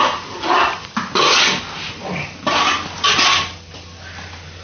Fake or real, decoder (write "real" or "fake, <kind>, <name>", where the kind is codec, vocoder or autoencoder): real